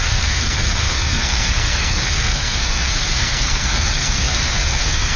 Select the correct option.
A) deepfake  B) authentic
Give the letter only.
A